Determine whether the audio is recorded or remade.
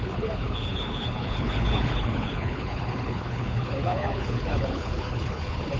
remade